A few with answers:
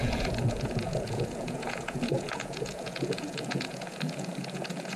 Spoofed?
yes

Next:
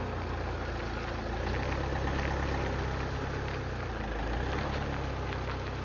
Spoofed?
no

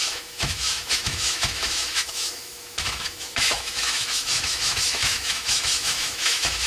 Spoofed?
yes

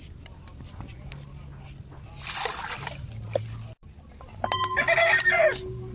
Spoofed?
no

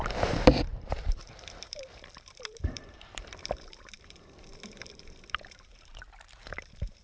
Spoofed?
yes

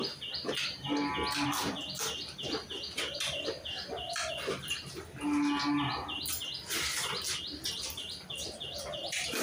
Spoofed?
no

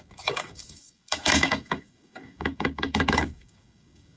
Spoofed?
yes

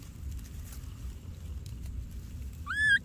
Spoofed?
no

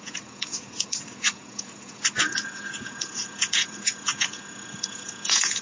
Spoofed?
yes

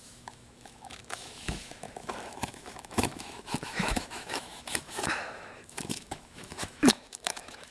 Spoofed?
yes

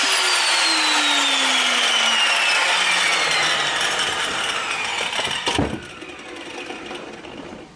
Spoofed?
no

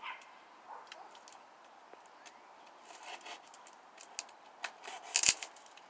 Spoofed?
no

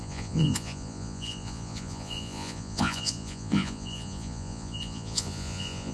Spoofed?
yes